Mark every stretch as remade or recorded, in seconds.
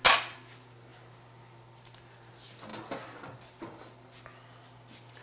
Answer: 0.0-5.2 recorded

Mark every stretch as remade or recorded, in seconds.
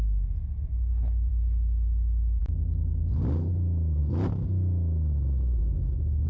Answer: 0.0-6.3 recorded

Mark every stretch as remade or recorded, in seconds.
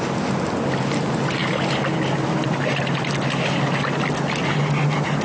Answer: 0.0-5.2 recorded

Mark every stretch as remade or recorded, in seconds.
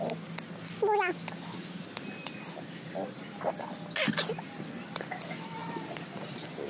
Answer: 0.0-6.7 recorded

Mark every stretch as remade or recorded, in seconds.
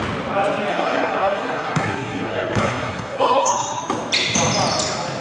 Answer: 0.0-0.7 recorded; 0.7-3.8 remade; 3.8-5.2 recorded